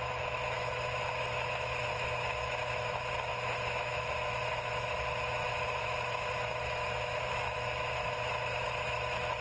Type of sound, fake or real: fake